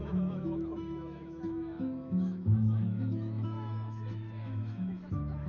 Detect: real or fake fake